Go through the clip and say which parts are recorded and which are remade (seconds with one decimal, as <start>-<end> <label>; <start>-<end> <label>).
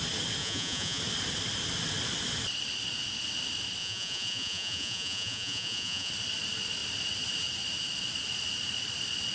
0.0-0.4 recorded; 0.4-1.0 remade; 1.0-3.8 recorded; 3.8-6.1 remade; 6.1-9.3 recorded